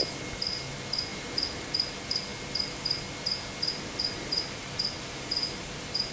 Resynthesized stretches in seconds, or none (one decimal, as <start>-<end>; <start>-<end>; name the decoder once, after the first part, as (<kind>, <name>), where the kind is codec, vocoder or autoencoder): 0.6-1.1 (vocoder, BigVGAN v2); 1.7-6.1